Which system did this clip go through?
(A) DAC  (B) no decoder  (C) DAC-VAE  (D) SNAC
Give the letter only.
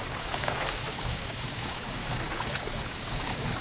A